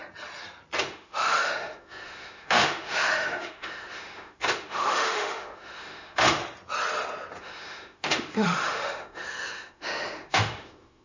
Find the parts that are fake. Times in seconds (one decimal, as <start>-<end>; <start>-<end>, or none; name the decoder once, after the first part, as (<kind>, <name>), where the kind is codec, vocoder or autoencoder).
0.8-6.4 (autoencoder, DAC-VAE); 7.4-11.0